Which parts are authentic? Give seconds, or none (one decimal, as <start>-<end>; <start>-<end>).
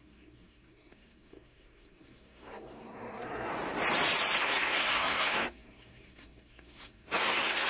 3.5-4.4